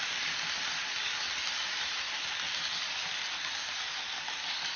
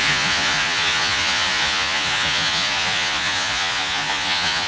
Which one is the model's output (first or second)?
second